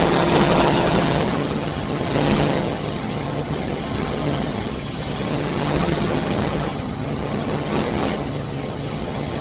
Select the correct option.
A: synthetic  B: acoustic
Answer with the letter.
A